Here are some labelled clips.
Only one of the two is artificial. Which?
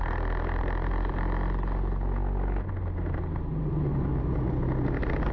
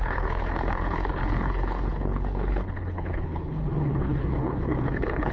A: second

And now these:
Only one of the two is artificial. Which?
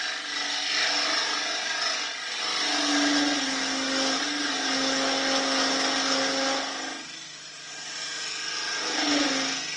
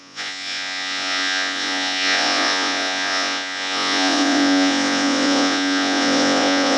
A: second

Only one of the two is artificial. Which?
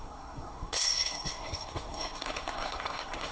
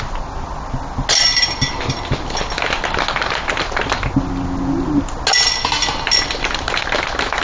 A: first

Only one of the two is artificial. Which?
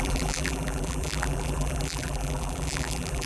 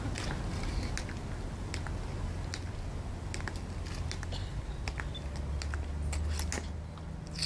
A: first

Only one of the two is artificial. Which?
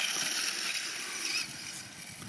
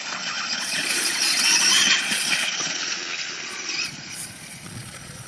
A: second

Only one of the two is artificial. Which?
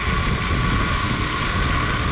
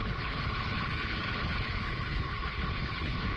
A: second